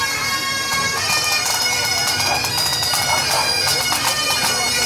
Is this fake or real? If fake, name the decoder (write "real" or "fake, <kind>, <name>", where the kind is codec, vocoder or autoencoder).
real